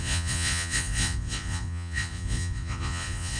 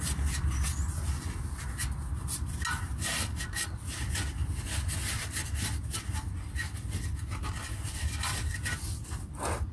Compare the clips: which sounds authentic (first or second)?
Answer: second